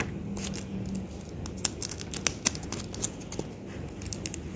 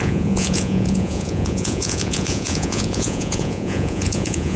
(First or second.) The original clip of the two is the first